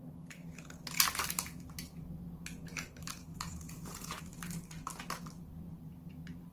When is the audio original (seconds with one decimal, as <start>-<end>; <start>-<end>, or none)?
0.0-3.3; 4.2-6.5